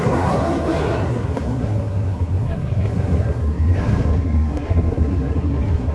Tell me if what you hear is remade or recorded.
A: remade